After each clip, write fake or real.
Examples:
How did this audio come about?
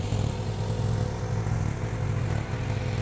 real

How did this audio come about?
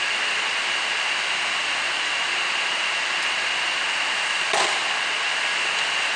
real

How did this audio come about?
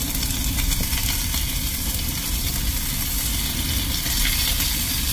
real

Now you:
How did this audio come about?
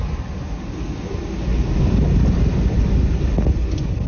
real